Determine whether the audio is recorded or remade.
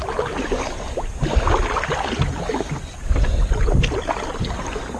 recorded